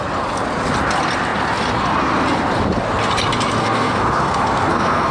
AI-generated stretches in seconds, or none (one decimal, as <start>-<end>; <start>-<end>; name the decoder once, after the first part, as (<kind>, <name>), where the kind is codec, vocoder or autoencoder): 3.6-5.1 (codec, SNAC)